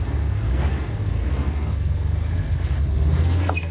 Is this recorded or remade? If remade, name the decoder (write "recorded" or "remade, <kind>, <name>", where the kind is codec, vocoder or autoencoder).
remade, codec, SNAC